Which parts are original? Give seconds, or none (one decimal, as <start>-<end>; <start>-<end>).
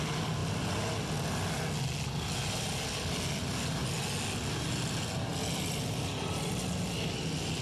0.0-7.6